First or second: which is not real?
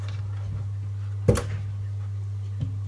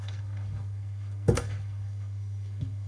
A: second